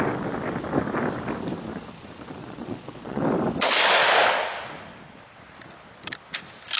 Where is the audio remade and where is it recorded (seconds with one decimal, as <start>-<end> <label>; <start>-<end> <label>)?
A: 0.0-2.4 recorded; 2.4-3.2 remade; 3.2-6.8 recorded